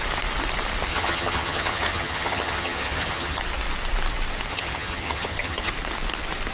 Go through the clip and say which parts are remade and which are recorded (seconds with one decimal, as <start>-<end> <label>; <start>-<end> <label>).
0.0-0.9 recorded; 0.9-3.4 remade; 3.4-4.5 recorded; 4.5-5.7 remade; 5.7-6.5 recorded